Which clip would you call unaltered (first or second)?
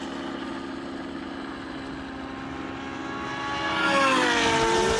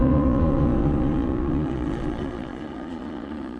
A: first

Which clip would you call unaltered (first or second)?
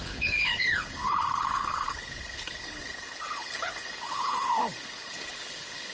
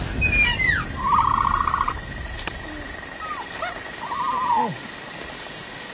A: second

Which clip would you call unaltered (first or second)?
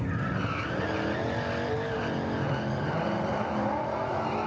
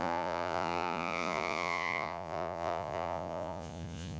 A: first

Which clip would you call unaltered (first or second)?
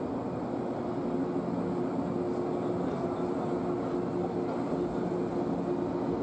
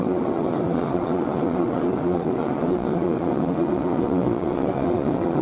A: first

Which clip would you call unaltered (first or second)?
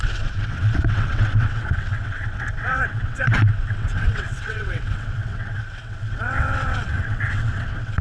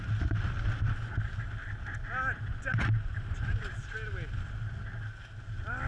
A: second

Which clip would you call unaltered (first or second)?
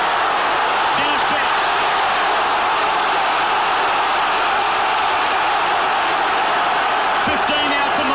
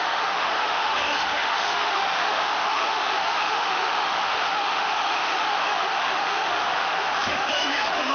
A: first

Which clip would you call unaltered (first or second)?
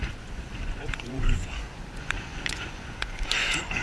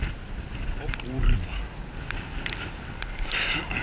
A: second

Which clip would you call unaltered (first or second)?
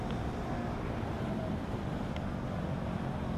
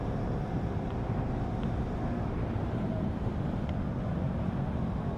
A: first